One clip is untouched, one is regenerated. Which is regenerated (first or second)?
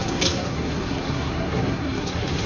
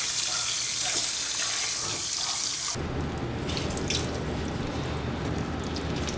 first